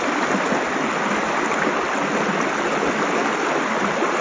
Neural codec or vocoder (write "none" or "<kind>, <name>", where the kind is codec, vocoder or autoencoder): none